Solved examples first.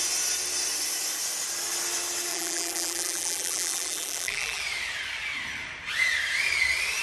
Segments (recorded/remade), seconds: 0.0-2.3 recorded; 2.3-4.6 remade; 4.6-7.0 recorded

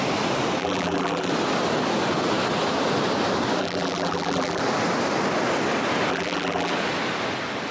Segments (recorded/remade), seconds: 0.0-0.6 recorded; 0.6-1.3 remade; 1.3-3.6 recorded; 3.6-4.6 remade; 4.6-6.1 recorded; 6.1-6.7 remade; 6.7-7.7 recorded